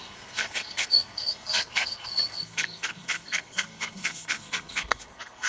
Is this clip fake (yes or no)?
yes